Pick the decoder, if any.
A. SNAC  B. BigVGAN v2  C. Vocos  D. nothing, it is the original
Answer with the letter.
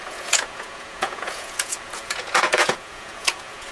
C